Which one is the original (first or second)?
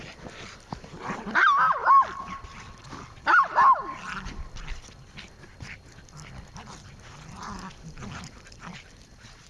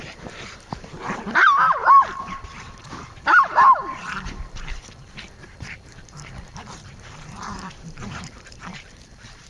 first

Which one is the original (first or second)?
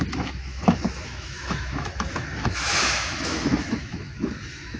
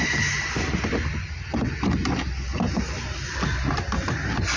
second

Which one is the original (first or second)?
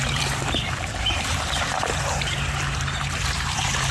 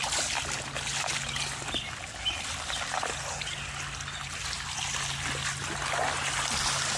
second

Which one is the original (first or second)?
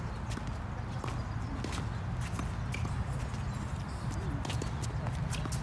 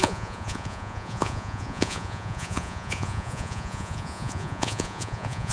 first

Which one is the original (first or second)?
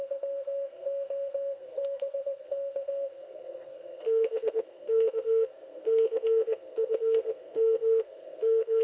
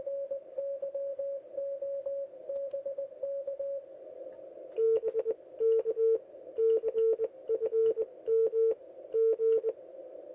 second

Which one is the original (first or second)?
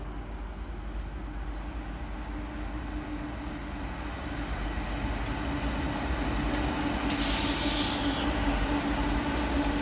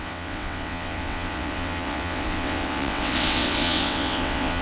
first